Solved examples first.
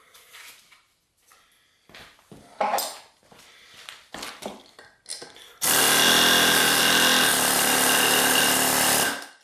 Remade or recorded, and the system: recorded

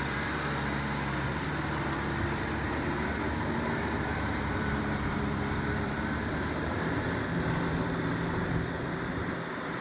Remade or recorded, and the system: remade, vocoder, BigVGAN v2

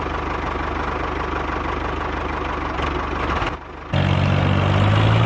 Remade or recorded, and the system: recorded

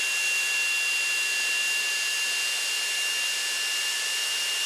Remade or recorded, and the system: remade, vocoder, BigVGAN v2